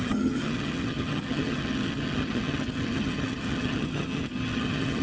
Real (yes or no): no